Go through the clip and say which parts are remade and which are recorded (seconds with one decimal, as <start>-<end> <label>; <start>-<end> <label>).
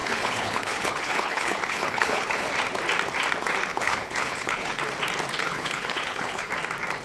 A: 0.0-2.5 remade; 2.5-3.7 recorded; 3.7-4.8 remade; 4.8-5.4 recorded; 5.4-6.5 remade; 6.5-7.0 recorded